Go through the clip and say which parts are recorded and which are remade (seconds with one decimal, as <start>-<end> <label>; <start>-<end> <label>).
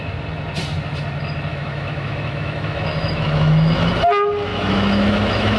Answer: 0.0-1.5 recorded; 1.5-3.9 remade; 3.9-4.5 recorded; 4.5-5.6 remade